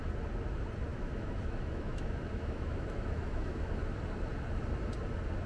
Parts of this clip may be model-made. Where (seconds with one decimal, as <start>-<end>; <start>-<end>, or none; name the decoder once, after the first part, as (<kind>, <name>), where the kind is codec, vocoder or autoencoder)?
0.9-3.8 (autoencoder, DAC-VAE)